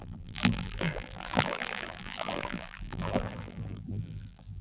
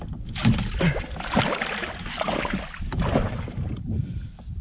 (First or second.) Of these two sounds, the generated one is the first